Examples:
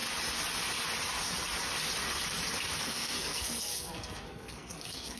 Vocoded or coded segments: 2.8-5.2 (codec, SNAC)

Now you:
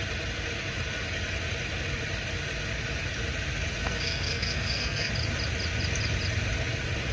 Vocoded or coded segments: 3.8-5.1 (codec, SNAC)

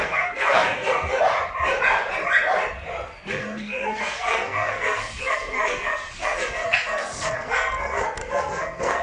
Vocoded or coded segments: 0.0-1.1 (codec, SNAC); 3.3-9.0

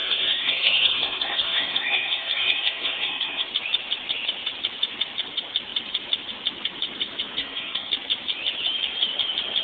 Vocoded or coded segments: 0.0-3.5 (codec, SNAC); 7.4-7.9

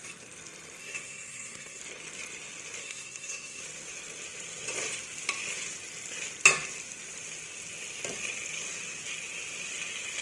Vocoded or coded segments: 0.8-1.8 (codec, SNAC); 2.8-3.6

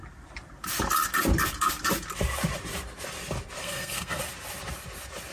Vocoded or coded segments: 3.6-4.2 (codec, SNAC)